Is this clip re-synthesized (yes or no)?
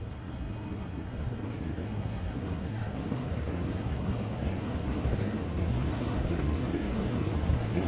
yes